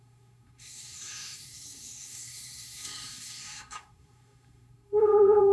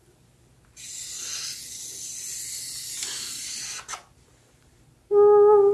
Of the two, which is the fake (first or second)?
first